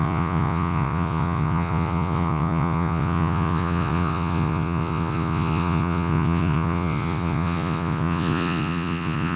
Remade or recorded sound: remade